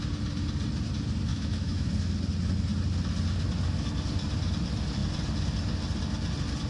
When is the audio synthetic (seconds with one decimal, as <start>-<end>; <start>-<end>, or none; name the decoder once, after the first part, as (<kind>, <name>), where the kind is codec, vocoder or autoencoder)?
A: 1.3-1.9 (autoencoder, DAC-VAE)